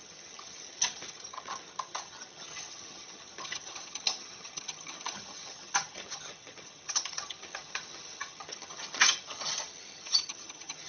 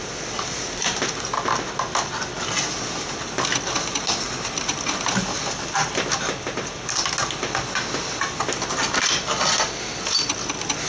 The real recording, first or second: second